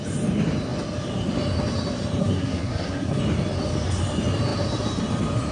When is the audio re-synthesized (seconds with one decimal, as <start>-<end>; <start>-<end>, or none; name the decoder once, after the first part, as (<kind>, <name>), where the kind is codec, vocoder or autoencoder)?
2.2-3.2 (codec, SNAC)